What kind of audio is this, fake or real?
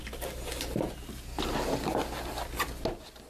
real